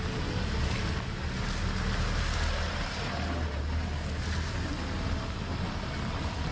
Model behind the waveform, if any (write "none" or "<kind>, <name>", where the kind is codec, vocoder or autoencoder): none